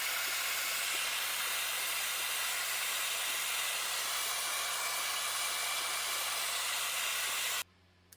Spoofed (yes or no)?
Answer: no